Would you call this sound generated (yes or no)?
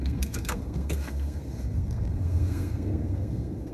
yes